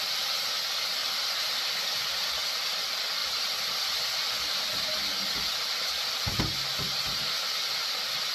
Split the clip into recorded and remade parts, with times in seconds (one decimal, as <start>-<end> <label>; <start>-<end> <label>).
0.0-8.3 recorded